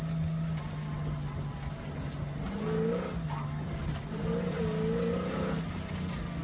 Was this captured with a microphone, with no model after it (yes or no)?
yes